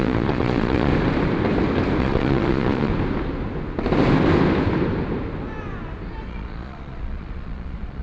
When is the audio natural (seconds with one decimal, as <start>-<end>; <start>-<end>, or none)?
0.9-2.0; 2.9-6.3